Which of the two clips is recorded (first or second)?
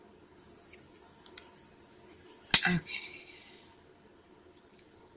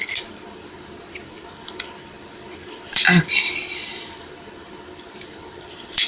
first